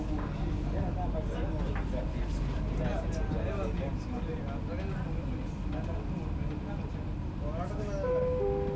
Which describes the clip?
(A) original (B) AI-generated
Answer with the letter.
A